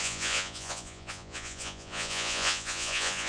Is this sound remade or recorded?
remade